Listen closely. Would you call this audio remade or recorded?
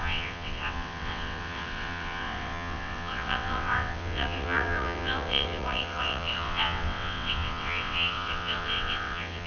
remade